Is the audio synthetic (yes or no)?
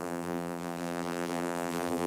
yes